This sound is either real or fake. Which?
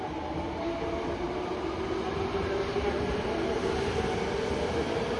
real